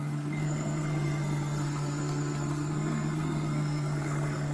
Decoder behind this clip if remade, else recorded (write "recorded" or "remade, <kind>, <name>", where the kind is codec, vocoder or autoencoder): remade, codec, SNAC